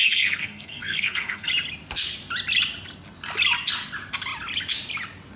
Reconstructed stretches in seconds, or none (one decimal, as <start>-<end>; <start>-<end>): 0.0-1.5